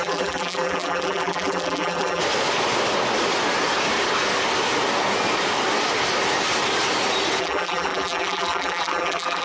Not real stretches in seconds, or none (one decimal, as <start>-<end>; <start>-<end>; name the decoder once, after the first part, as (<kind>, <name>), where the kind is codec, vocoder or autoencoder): 0.0-2.2 (vocoder, BigVGAN v2); 7.4-9.4

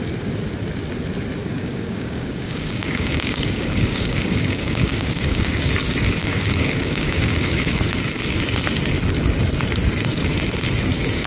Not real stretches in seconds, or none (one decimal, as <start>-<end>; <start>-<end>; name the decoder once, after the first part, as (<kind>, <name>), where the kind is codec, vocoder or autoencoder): 1.4-5.7 (codec, DAC); 6.2-7.8

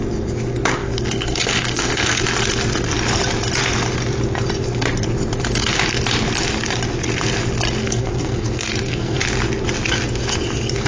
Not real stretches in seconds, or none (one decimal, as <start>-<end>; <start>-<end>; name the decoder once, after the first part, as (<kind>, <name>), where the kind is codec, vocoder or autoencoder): 0.8-2.2 (codec, SNAC); 7.8-9.2

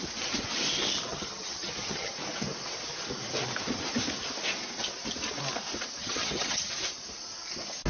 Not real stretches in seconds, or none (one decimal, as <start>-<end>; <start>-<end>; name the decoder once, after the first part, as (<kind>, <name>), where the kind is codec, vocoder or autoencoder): 1.1-2.1 (vocoder, HiFi-GAN); 6.0-6.7

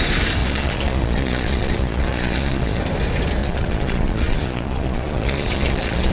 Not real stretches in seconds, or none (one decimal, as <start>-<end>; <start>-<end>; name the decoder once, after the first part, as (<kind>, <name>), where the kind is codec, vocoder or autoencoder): 0.4-2.8 (vocoder, Vocos); 3.4-6.1

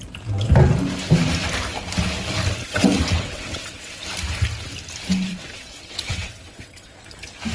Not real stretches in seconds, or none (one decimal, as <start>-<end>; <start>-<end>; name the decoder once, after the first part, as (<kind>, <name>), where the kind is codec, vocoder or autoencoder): 2.6-4.0 (vocoder, WaveNeXt); 5.3-7.0

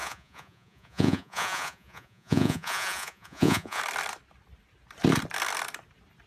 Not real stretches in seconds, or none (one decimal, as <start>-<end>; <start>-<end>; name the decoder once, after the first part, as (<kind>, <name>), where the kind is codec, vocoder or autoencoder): 0.0-3.8 (vocoder, Vocos)